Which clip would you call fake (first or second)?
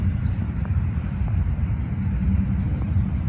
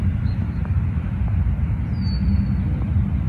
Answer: first